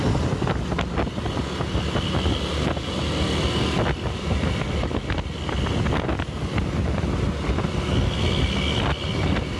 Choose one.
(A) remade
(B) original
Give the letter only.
B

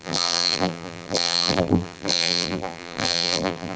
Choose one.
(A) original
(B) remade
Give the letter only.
B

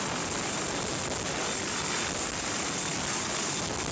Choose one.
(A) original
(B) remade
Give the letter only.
A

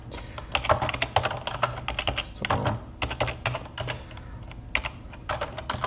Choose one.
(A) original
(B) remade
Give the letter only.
A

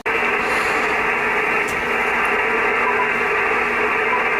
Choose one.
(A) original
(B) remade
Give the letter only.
A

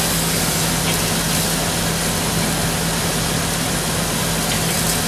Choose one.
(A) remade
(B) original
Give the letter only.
B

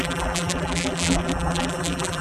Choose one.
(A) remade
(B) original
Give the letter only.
A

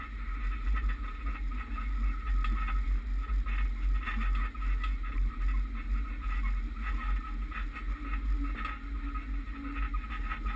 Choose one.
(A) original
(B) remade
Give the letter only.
A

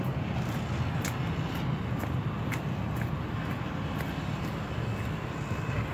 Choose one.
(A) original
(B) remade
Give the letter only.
A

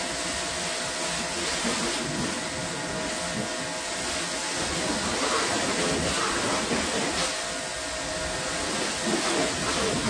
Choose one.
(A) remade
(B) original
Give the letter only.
B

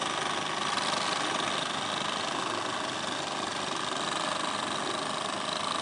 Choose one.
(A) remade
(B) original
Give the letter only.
B